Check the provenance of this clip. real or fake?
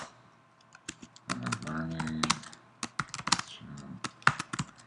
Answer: real